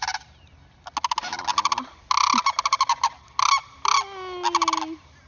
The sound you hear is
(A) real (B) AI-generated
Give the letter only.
A